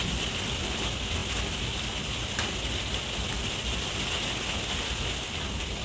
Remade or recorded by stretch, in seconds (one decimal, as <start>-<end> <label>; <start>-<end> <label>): 0.0-5.8 recorded